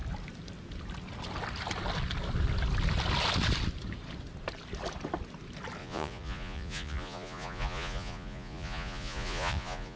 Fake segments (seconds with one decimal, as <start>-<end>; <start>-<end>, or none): 5.8-10.0